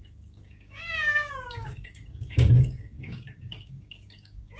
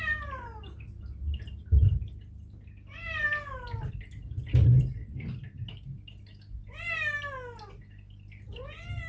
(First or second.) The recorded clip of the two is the second